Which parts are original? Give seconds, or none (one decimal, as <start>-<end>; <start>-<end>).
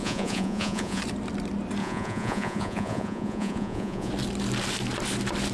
1.0-1.8; 4.1-5.5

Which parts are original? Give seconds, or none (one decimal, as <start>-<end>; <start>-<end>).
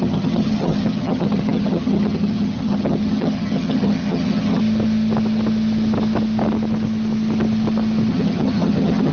4.6-8.1